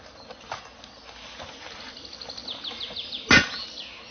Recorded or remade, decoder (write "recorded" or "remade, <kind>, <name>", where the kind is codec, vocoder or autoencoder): recorded